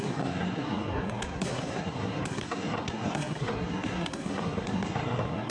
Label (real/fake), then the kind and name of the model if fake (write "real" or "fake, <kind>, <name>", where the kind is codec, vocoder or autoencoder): fake, codec, SNAC